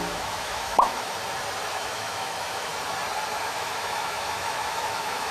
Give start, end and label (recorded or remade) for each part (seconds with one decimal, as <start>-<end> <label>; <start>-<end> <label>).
0.0-1.2 remade; 1.2-1.7 recorded; 1.7-2.7 remade; 2.7-3.4 recorded; 3.4-5.3 remade